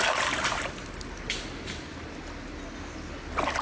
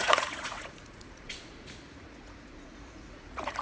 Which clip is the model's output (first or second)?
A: second